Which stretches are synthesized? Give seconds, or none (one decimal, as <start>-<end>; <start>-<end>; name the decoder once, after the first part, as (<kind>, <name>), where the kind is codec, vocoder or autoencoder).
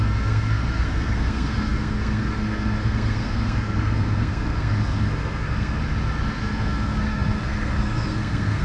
0.0-5.8 (codec, SNAC); 6.4-8.6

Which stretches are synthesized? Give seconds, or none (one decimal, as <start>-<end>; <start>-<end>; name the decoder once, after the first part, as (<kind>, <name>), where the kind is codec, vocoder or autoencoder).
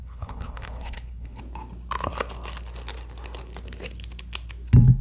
0.0-1.4 (codec, HILCodec)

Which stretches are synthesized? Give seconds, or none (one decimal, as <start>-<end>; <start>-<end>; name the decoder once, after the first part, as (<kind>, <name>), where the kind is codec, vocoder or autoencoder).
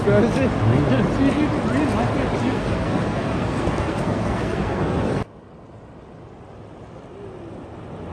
2.4-5.2 (codec, SNAC)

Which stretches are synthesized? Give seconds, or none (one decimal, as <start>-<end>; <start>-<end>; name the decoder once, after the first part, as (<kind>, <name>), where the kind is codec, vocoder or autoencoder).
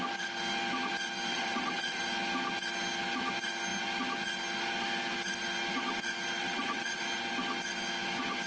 1.3-2.0 (vocoder, WaveNeXt); 6.4-7.0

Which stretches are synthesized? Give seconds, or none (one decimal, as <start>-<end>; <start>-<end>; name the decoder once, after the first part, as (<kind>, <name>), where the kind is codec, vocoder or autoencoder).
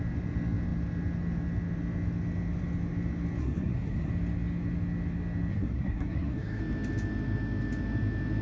3.4-4.1 (codec, SNAC); 5.5-6.6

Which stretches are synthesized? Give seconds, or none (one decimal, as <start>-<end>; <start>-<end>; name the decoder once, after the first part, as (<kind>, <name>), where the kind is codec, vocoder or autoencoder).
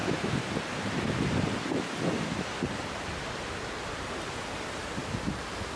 none